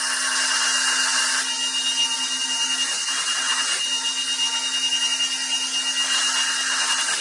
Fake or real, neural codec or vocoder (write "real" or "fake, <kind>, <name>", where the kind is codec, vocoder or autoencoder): real